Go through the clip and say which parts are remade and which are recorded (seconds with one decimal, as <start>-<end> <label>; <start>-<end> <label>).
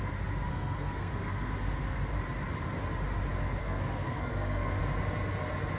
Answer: 0.0-0.5 recorded; 0.5-2.1 remade; 2.1-3.6 recorded; 3.6-4.8 remade; 4.8-5.8 recorded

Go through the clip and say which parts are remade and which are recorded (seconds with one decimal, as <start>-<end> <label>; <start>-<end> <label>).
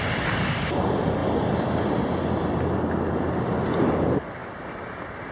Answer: 0.0-5.3 recorded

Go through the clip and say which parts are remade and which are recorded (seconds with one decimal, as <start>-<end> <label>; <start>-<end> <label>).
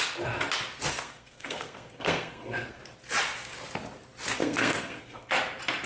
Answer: 0.0-0.9 recorded; 0.9-2.8 remade; 2.8-4.4 recorded; 4.4-5.3 remade; 5.3-5.9 recorded